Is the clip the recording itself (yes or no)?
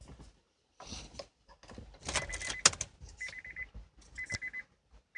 yes